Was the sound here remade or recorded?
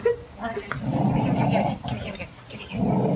recorded